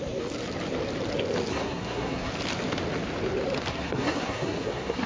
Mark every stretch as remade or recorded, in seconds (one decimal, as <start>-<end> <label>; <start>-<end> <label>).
0.0-1.5 recorded; 1.5-2.3 remade; 2.3-3.7 recorded; 3.7-5.1 remade